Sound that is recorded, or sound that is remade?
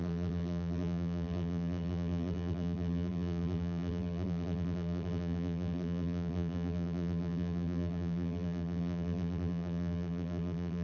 remade